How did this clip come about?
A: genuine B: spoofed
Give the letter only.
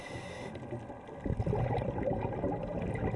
A